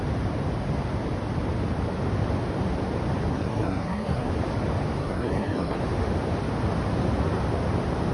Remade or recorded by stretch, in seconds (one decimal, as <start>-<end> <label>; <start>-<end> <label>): 0.0-3.3 recorded; 3.3-4.3 remade; 4.3-5.0 recorded; 5.0-5.8 remade; 5.8-8.1 recorded